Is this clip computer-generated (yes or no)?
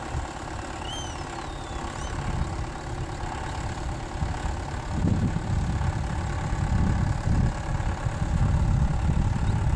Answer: no